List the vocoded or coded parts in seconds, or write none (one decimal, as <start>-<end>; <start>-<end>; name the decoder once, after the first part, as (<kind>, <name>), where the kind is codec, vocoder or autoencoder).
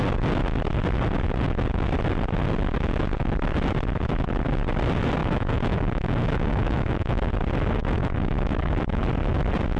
5.2-7.3 (autoencoder, DAC-VAE); 7.8-9.0